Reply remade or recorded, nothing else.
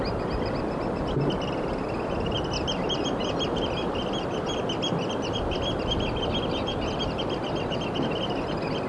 recorded